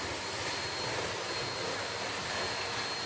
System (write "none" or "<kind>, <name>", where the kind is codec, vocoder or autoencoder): none